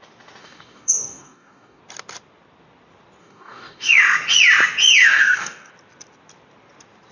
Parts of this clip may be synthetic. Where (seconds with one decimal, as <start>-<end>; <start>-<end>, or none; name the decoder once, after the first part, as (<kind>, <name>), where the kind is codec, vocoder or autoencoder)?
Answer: 0.4-1.8 (codec, DAC); 3.2-4.0; 5.0-5.7

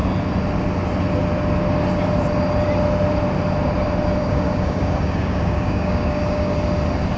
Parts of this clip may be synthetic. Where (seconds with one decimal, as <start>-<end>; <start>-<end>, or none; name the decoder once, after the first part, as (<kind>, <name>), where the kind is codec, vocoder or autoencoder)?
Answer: 4.2-6.5 (codec, DAC)

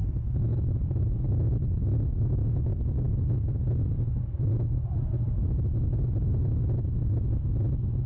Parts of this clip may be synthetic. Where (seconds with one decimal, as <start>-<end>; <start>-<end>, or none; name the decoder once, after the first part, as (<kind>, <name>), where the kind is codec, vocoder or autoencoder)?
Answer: 0.0-4.9 (codec, DAC)

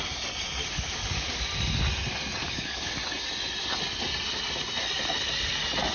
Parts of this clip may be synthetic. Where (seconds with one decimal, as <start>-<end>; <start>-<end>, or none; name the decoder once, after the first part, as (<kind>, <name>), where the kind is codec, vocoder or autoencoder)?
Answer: 0.6-1.4 (codec, DAC); 2.4-2.9

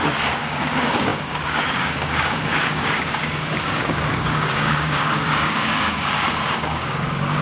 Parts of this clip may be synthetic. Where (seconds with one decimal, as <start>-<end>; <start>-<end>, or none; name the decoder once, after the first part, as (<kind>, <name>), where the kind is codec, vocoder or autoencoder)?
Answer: 0.0-7.4 (codec, DAC)

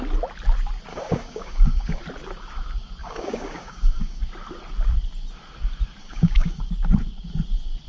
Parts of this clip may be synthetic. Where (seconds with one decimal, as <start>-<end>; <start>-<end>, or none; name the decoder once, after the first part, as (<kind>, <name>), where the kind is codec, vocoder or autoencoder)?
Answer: 0.9-2.0 (codec, DAC); 3.0-4.2; 6.0-6.6